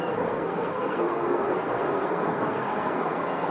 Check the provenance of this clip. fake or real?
fake